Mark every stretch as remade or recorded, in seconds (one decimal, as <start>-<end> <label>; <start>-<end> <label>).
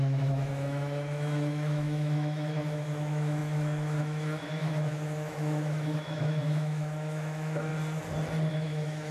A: 0.0-7.7 remade; 7.7-8.5 recorded; 8.5-9.1 remade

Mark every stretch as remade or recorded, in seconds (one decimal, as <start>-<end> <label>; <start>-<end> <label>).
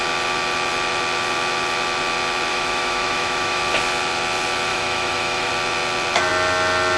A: 0.0-2.5 recorded; 2.5-3.6 remade; 3.6-4.7 recorded; 4.7-5.5 remade; 5.5-7.0 recorded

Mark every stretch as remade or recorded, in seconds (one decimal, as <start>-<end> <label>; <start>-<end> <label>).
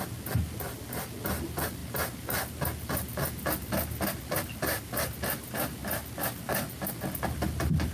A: 0.0-7.9 recorded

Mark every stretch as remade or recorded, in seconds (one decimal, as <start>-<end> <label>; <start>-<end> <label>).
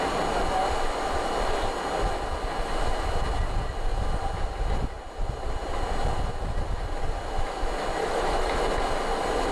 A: 0.0-8.0 recorded; 8.0-8.6 remade; 8.6-9.5 recorded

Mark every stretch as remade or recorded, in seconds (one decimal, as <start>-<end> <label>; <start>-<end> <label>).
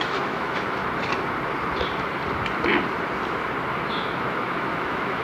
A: 0.0-0.8 remade; 0.8-3.9 recorded; 3.9-5.2 remade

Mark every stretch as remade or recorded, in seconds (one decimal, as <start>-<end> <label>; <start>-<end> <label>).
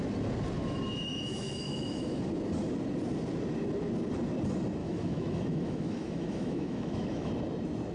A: 0.0-0.6 recorded; 0.6-2.2 remade; 2.2-4.8 recorded; 4.8-7.3 remade; 7.3-7.9 recorded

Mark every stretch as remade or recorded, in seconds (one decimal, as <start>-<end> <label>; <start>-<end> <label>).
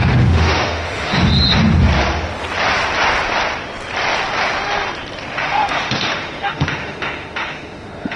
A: 0.0-1.1 remade; 1.1-5.4 recorded; 5.4-8.2 remade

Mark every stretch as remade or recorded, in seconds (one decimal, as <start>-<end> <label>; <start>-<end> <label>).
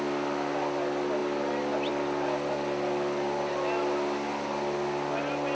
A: 0.0-5.5 recorded